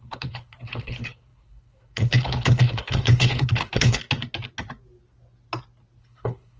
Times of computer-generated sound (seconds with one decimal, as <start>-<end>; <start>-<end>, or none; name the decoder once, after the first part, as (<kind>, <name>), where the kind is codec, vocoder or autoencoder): 0.0-4.0 (codec, HILCodec); 6.0-6.6